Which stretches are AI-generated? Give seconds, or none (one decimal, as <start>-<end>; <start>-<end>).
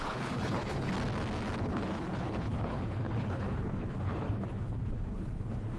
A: 0.0-0.9; 1.6-5.8